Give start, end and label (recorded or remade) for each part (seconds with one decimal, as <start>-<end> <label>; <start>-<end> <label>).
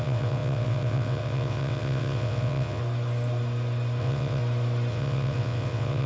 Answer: 0.0-2.8 remade; 2.8-4.0 recorded; 4.0-4.4 remade; 4.4-4.9 recorded; 4.9-6.1 remade